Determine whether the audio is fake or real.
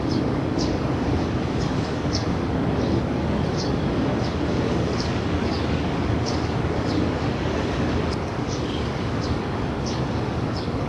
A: fake